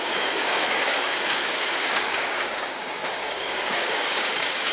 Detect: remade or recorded remade